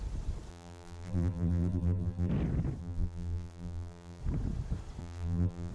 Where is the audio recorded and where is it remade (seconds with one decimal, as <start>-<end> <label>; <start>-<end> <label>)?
0.0-0.5 recorded; 0.5-2.3 remade; 2.3-2.8 recorded; 2.8-4.2 remade; 4.2-5.0 recorded; 5.0-5.7 remade